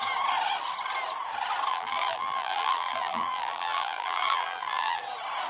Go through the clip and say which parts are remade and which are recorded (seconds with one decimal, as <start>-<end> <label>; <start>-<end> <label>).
0.0-1.7 recorded; 1.7-5.0 remade; 5.0-5.5 recorded